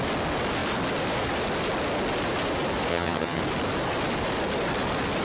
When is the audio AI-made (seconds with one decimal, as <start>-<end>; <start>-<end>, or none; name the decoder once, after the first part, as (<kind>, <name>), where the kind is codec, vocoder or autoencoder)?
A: 2.9-3.4 (vocoder, HiFi-GAN)